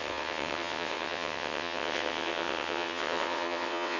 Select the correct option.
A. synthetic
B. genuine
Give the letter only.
A